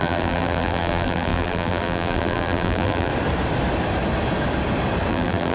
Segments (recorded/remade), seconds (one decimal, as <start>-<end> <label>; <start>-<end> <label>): 0.0-3.1 remade; 3.1-5.1 recorded; 5.1-5.5 remade